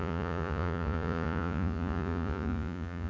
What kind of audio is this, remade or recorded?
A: remade